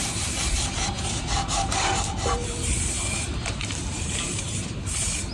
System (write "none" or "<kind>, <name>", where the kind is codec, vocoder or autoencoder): vocoder, BigVGAN v2